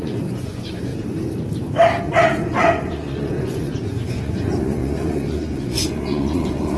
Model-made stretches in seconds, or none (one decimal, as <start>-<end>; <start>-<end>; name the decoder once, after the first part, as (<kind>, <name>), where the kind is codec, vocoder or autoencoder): 0.0-0.9 (vocoder, Vocos); 2.0-6.8